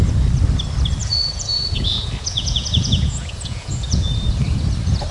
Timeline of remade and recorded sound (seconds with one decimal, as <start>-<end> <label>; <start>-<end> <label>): 0.0-1.0 recorded; 1.0-4.1 remade; 4.1-5.1 recorded